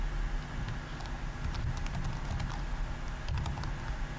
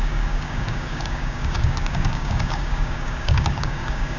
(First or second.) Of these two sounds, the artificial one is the second